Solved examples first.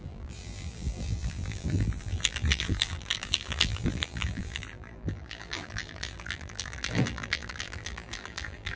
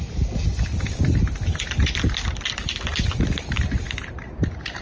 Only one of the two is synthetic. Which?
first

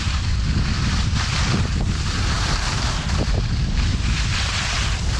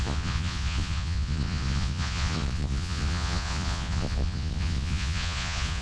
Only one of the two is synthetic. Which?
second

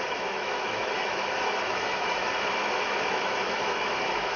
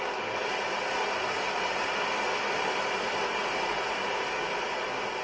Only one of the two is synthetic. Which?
first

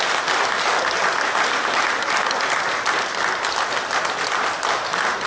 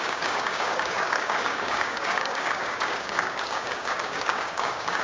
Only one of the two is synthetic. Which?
second